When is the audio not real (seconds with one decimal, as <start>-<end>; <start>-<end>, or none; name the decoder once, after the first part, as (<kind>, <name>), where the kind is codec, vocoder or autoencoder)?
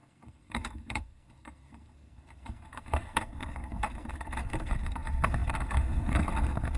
0.0-6.8 (codec, SNAC)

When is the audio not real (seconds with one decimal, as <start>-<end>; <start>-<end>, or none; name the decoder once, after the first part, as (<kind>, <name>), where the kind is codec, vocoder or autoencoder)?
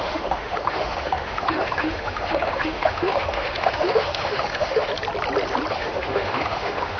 0.0-4.9 (autoencoder, DAC-VAE); 5.7-7.0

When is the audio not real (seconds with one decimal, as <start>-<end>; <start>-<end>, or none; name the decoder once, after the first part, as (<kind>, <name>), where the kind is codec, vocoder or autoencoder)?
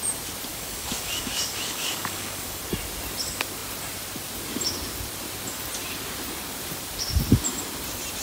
0.5-2.6 (codec, DAC)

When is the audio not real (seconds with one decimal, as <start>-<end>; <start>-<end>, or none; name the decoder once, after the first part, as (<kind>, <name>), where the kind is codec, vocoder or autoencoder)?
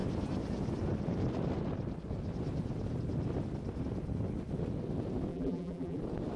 5.3-6.0 (vocoder, BigVGAN v2)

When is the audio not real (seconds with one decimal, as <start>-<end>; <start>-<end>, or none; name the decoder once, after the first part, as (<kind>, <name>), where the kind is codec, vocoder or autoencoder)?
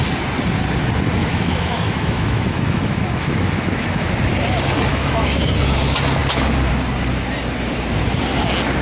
1.2-4.1 (autoencoder, DAC-VAE); 4.9-5.4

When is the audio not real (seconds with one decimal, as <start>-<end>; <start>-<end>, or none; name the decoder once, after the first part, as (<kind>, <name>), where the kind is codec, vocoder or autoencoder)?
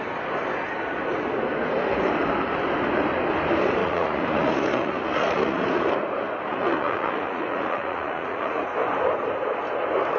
3.8-5.9 (vocoder, Vocos); 6.5-8.6